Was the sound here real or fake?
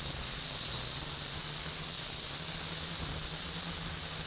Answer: real